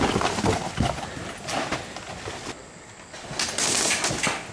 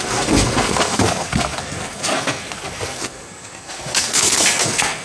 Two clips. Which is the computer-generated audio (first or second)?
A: second